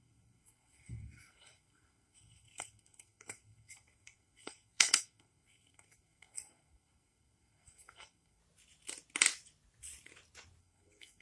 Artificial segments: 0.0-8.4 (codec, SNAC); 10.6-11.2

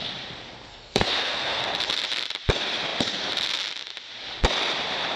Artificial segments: 0.7-1.6 (codec, SNAC)

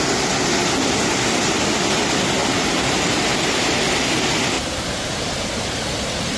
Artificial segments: 0.6-1.5 (vocoder, BigVGAN v2); 2.4-6.4

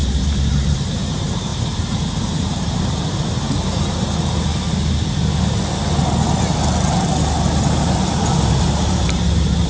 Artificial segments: 0.0-4.5 (vocoder, BigVGAN v2); 8.4-9.7

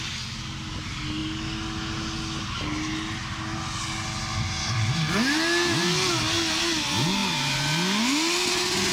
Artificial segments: none

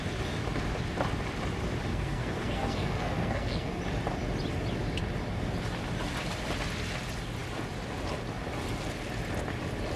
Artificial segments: 1.9-3.8 (codec, SNAC)

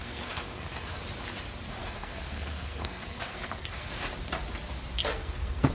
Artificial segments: 0.0-1.0 (codec, SNAC); 1.8-3.9; 5.0-5.7

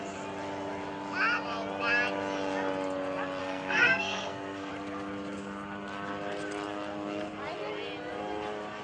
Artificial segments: 3.4-4.7 (codec, SNAC)